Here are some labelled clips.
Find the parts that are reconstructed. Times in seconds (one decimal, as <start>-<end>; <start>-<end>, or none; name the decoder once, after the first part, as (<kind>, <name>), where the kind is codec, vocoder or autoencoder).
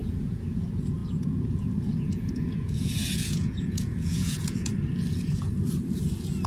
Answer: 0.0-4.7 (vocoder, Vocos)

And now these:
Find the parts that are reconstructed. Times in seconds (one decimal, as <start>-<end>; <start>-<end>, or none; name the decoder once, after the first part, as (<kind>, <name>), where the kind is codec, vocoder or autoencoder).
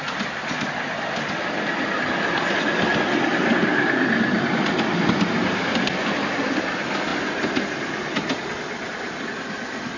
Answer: none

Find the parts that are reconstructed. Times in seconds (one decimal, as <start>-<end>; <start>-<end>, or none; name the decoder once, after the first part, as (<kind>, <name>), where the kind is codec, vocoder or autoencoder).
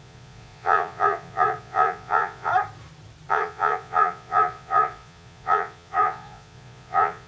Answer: 0.0-2.5 (vocoder, Vocos); 3.3-7.3